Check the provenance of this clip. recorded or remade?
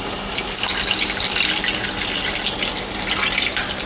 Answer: recorded